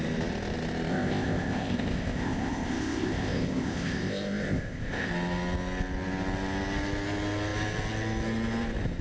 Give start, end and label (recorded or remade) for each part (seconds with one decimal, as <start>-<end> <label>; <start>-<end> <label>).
0.0-0.9 recorded; 0.9-5.1 remade; 5.1-9.0 recorded